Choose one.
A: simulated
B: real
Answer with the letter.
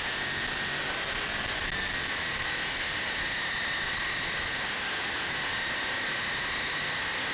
B